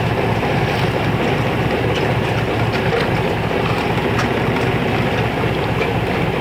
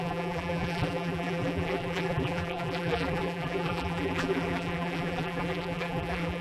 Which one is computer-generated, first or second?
second